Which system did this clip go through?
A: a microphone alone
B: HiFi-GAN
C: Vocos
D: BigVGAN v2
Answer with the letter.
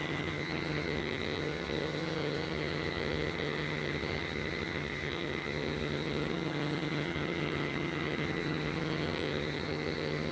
B